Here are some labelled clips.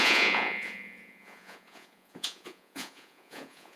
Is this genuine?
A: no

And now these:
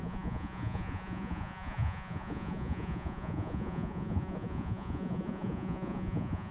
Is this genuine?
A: no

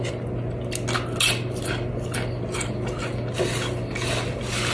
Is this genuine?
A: yes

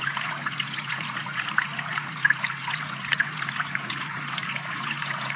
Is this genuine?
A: no